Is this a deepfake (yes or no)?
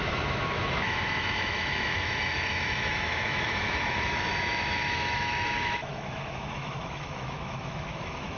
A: yes